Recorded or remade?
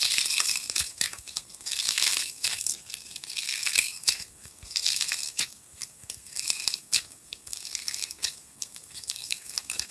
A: remade